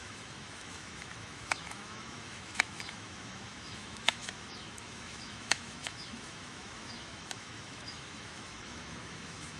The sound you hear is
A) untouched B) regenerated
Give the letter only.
B